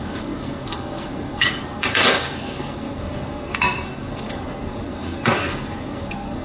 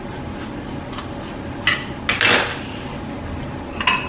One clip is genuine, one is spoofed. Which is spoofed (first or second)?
first